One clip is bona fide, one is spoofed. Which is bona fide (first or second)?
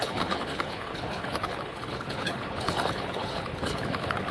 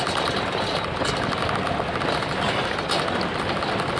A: second